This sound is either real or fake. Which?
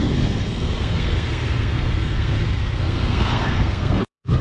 fake